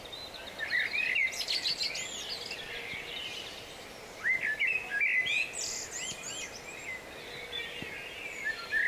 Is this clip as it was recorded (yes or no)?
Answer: yes